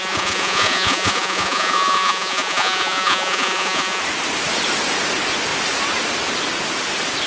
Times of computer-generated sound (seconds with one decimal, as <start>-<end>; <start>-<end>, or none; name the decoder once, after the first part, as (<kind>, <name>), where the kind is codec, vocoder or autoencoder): 0.0-4.0 (vocoder, Vocos)